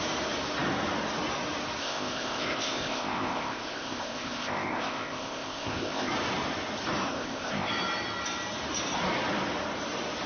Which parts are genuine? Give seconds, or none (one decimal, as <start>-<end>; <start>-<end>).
0.0-1.8; 6.1-7.1; 7.7-10.3